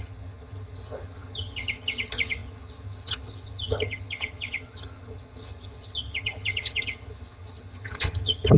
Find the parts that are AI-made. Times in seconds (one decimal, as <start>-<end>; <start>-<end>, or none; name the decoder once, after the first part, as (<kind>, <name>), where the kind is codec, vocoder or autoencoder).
0.0-8.6 (vocoder, HiFi-GAN)